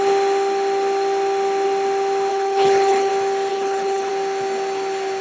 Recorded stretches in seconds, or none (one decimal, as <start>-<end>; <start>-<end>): 0.0-2.3; 3.1-3.5; 4.1-5.2